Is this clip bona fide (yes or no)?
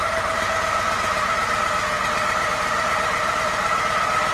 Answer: yes